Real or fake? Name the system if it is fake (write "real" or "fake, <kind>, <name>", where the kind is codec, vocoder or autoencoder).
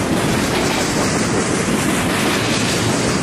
real